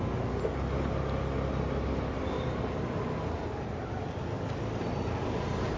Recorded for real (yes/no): yes